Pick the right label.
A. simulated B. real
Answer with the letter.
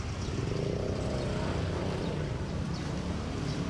A